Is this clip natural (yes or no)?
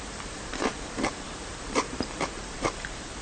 no